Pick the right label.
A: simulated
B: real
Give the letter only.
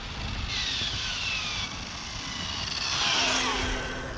B